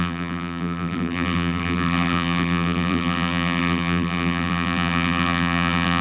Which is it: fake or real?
fake